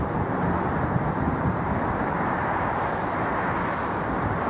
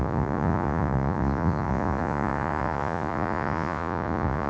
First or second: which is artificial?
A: second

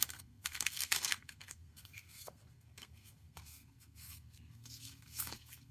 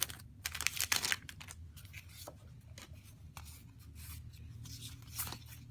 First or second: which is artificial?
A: first